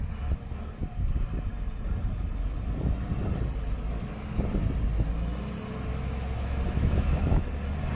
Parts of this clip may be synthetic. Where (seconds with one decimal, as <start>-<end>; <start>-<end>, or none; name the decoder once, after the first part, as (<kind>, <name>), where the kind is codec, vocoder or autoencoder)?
5.9-7.5 (autoencoder, DAC-VAE)